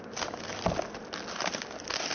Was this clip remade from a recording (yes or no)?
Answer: no